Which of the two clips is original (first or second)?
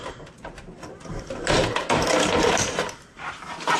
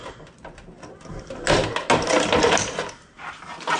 second